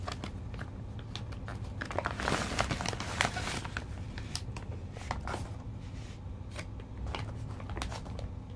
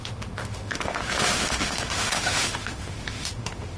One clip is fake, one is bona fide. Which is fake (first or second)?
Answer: second